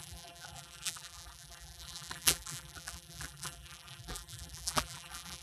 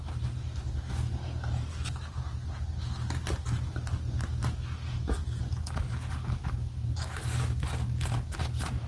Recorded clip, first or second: second